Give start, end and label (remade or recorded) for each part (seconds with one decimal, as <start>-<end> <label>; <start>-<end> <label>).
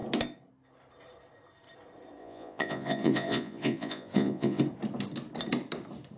0.0-2.2 recorded; 2.2-4.6 remade; 4.6-6.2 recorded